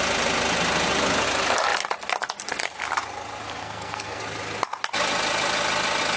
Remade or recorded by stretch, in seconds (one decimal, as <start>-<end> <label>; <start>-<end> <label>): 0.0-3.6 recorded; 3.6-4.2 remade; 4.2-6.2 recorded